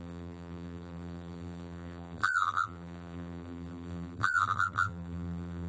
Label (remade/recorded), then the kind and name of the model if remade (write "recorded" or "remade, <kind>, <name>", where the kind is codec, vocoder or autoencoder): remade, vocoder, BigVGAN v2